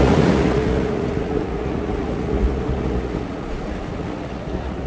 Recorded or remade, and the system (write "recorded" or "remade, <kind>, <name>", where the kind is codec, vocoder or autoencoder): remade, vocoder, Vocos